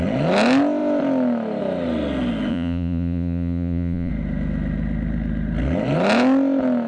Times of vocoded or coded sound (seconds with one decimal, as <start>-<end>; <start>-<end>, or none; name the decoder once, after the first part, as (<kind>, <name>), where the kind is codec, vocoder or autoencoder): 2.5-4.1 (vocoder, Vocos)